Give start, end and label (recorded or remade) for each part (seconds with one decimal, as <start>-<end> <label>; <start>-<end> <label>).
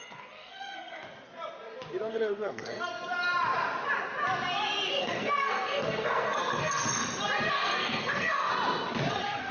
0.0-1.0 remade; 1.0-2.1 recorded; 2.1-2.9 remade; 2.9-5.0 recorded; 5.0-7.0 remade; 7.0-7.5 recorded; 7.5-8.5 remade; 8.5-9.1 recorded; 9.1-9.5 remade